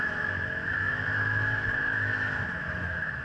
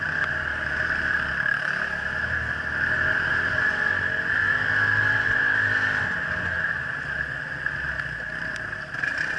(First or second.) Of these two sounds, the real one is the second